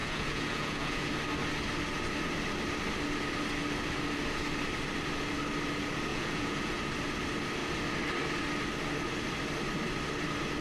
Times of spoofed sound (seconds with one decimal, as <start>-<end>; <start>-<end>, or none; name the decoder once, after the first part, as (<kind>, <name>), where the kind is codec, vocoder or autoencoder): 0.0-1.1 (vocoder, Vocos); 6.1-6.8